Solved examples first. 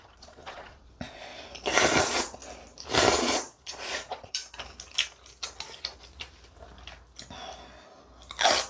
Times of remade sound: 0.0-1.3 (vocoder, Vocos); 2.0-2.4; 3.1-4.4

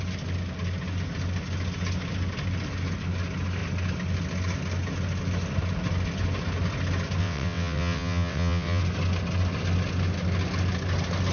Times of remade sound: 7.2-8.8 (vocoder, WaveNeXt)

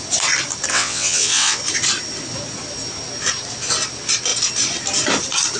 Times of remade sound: 0.7-1.6 (vocoder, WaveNeXt)